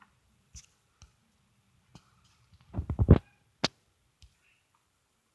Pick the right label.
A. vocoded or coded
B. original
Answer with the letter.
B